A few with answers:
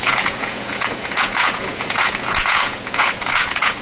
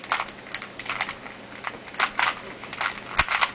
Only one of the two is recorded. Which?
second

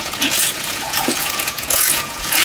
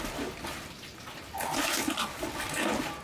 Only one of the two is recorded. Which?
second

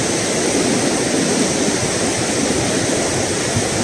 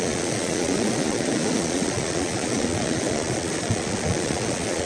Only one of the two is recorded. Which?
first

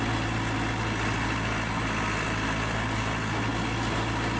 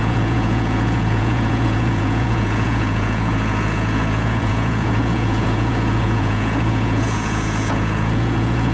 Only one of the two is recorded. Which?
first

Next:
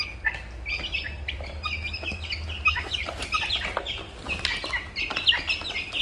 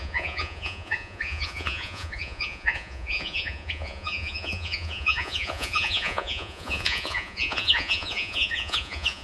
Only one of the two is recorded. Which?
first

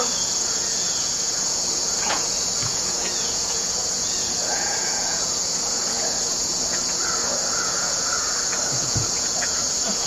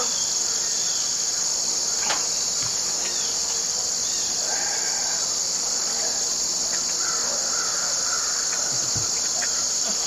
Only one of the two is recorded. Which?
second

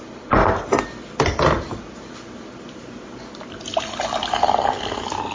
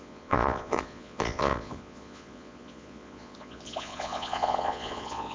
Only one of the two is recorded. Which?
first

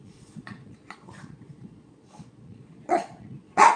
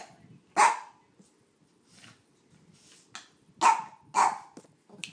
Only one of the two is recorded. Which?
second